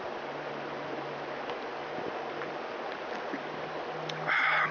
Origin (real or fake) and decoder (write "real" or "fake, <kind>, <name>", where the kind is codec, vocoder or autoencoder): real